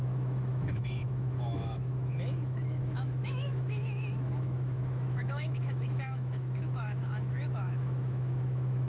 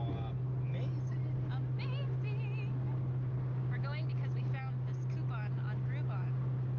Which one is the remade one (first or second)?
first